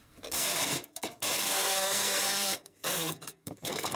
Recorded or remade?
remade